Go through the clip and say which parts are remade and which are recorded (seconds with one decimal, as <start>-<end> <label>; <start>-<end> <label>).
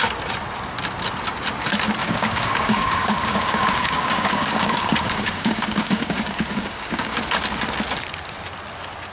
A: 0.0-2.0 recorded; 2.0-7.2 remade; 7.2-9.1 recorded